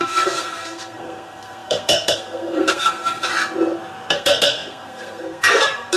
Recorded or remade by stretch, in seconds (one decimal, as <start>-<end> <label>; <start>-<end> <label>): 0.0-3.3 remade; 3.3-4.1 recorded; 4.1-6.0 remade